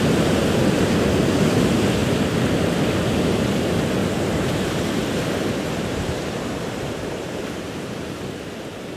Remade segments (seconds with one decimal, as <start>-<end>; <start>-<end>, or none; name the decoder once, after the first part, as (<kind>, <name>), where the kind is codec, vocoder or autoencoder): 4.0-7.4 (vocoder, BigVGAN v2)